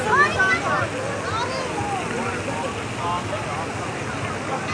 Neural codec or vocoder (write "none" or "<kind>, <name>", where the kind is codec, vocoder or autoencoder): none